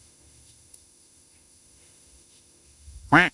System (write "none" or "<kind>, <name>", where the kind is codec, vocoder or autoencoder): autoencoder, DAC-VAE